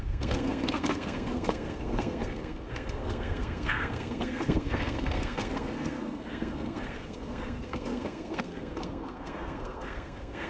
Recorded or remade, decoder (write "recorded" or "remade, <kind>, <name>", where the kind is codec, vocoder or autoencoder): remade, codec, SNAC